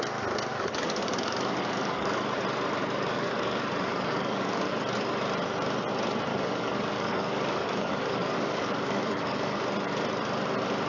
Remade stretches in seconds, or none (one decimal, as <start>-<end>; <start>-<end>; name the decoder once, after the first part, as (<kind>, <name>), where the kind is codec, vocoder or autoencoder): 0.5-2.2 (codec, DAC); 2.8-4.7; 6.3-9.6